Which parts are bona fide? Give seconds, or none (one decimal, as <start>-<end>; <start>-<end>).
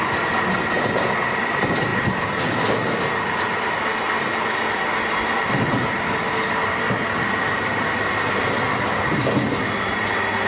0.0-10.5